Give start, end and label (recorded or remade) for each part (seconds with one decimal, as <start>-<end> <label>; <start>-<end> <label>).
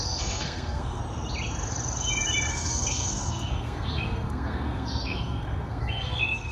0.0-1.0 remade; 1.0-2.5 recorded; 2.5-6.5 remade